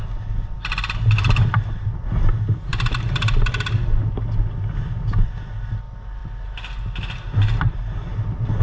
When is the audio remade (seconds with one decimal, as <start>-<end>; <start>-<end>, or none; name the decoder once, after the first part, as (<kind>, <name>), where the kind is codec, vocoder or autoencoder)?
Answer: none